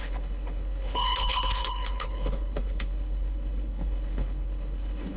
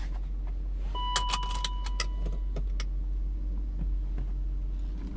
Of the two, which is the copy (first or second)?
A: first